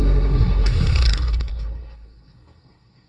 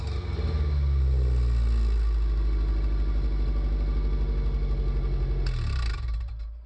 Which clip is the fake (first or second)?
first